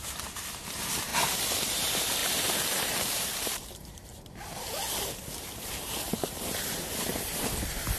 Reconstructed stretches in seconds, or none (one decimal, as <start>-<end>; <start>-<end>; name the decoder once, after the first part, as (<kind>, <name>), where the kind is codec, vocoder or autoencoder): 0.0-1.1 (vocoder, BigVGAN v2); 1.7-4.1; 5.6-7.1